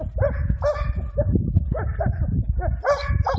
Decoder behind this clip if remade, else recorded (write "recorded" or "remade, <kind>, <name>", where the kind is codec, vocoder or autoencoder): recorded